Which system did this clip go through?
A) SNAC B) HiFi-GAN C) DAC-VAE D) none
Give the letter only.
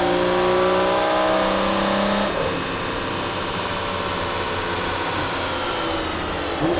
D